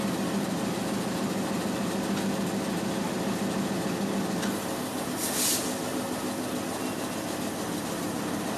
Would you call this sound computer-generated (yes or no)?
no